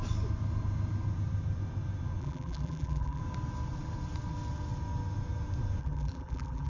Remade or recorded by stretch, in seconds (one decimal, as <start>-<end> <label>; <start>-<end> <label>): 0.0-2.2 recorded; 2.2-3.2 remade; 3.2-5.8 recorded; 5.8-6.7 remade